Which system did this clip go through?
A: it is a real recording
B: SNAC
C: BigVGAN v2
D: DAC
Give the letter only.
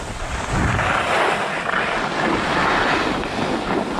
A